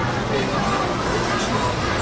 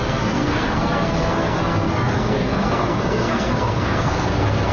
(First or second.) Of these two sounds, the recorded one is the first